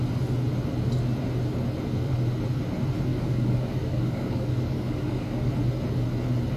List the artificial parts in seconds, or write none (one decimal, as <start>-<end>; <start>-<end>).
3.1-5.5